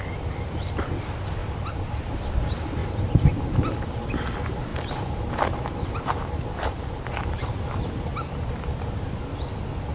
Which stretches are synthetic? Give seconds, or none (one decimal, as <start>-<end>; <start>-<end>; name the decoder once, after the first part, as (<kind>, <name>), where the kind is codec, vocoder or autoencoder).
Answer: 1.4-2.1 (vocoder, BigVGAN v2); 2.8-3.4; 4.7-8.5